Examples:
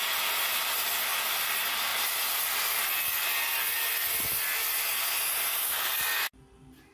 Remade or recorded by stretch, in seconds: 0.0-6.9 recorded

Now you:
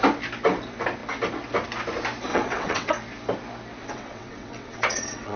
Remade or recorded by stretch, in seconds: 0.0-2.3 recorded; 2.3-2.9 remade; 2.9-3.8 recorded; 3.8-5.4 remade

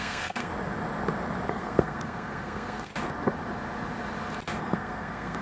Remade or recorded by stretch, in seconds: 0.0-0.5 remade; 0.5-1.5 recorded; 1.5-2.9 remade; 2.9-4.6 recorded; 4.6-5.4 remade